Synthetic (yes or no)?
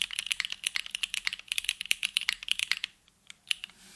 no